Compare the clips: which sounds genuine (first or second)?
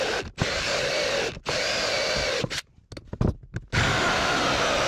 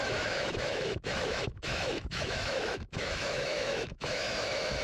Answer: first